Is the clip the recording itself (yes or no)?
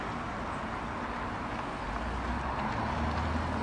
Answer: yes